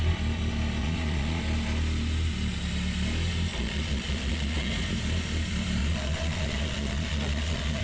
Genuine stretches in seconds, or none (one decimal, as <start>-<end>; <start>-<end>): 0.0-0.8; 1.4-3.5; 4.7-5.8